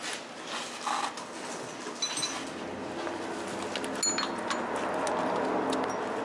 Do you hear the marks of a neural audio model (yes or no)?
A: no